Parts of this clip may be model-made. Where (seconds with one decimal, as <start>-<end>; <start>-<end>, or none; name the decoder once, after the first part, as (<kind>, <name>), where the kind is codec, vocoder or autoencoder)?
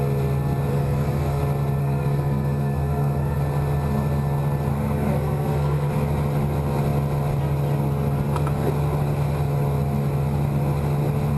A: 0.7-1.4 (codec, SNAC); 1.8-3.4; 4.7-5.9